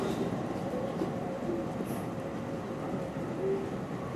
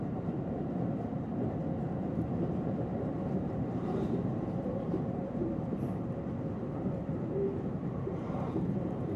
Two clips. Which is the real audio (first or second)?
first